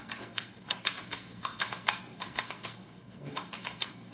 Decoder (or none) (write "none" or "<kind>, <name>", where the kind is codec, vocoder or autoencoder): codec, SNAC